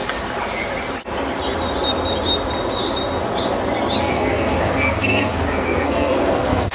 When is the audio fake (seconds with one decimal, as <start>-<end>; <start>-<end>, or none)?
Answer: 4.0-6.7